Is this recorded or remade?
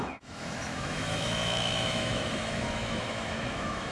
remade